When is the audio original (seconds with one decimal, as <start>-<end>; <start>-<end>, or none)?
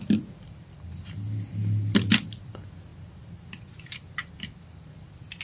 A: none